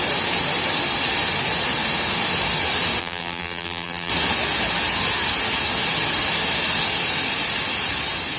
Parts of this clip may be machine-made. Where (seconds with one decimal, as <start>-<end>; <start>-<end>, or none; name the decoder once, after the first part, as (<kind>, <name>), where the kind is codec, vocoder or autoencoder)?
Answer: 3.0-4.1 (vocoder, BigVGAN v2)